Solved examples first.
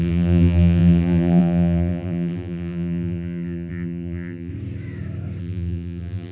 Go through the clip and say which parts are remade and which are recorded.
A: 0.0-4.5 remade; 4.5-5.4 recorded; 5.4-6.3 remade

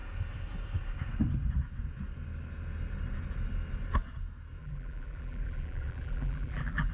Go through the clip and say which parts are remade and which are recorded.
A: 0.0-4.6 recorded; 4.6-6.9 remade